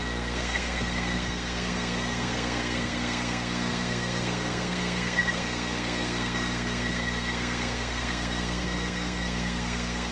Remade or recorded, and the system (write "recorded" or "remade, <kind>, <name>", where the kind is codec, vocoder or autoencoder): remade, codec, SNAC